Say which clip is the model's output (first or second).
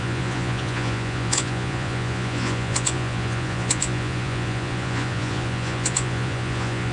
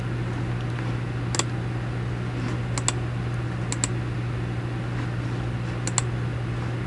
first